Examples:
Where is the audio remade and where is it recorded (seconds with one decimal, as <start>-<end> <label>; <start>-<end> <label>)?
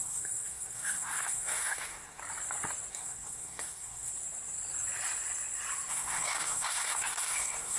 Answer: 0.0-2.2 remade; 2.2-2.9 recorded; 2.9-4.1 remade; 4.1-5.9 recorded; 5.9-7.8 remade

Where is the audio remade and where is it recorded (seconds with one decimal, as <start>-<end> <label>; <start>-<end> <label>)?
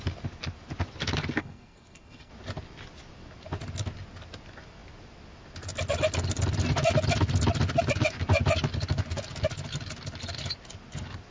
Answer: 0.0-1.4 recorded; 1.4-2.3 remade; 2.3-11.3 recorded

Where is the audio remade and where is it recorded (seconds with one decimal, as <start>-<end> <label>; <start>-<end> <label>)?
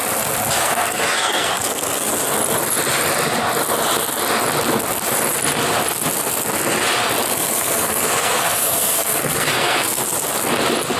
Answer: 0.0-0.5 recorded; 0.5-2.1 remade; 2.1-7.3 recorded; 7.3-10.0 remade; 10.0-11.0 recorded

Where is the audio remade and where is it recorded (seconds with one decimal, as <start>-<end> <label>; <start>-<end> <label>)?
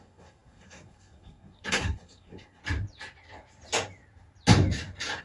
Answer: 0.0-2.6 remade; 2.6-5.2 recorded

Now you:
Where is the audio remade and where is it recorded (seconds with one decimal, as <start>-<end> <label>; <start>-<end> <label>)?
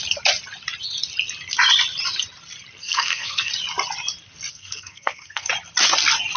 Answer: 0.0-2.8 recorded; 2.8-3.5 remade; 3.5-4.5 recorded; 4.5-5.5 remade; 5.5-6.4 recorded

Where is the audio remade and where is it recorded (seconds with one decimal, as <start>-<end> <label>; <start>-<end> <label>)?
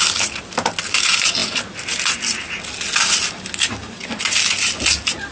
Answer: 0.0-5.3 recorded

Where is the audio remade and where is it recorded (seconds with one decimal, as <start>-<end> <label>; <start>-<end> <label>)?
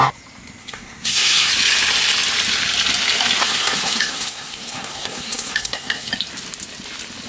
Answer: 0.0-0.6 recorded; 0.6-1.5 remade; 1.5-3.4 recorded; 3.4-6.1 remade; 6.1-7.3 recorded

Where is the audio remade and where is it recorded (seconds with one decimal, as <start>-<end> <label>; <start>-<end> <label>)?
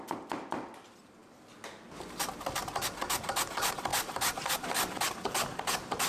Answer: 0.0-6.1 recorded